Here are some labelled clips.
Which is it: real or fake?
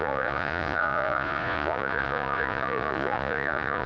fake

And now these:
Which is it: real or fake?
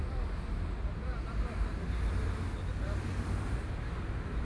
real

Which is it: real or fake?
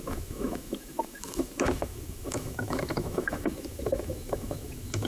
fake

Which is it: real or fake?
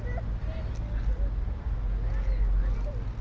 real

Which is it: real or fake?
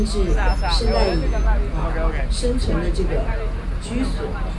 real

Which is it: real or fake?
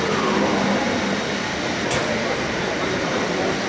real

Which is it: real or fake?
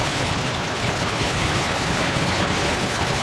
fake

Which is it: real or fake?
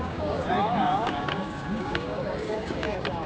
fake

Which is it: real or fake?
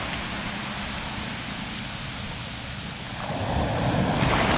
real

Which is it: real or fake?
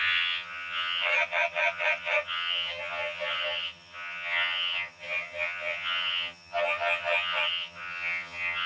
fake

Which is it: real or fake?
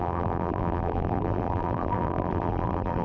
fake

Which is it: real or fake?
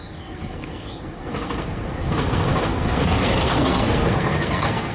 fake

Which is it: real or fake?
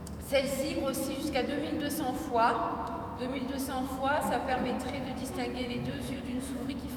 fake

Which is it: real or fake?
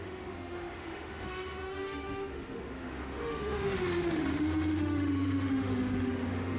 fake